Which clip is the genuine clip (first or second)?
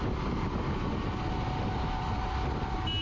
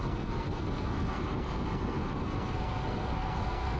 first